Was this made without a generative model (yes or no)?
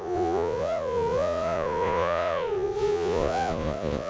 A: no